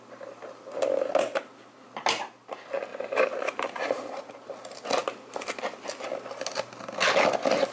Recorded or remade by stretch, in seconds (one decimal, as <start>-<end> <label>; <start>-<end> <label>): 0.0-2.9 recorded; 2.9-4.2 remade; 4.2-7.7 recorded